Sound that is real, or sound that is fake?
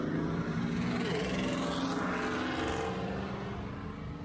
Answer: real